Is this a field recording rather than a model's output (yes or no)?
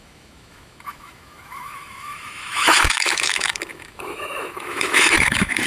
no